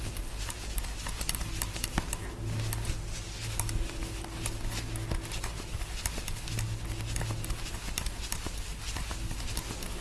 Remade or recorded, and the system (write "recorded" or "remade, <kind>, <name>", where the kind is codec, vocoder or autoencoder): recorded